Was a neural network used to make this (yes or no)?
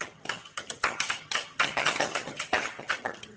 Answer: yes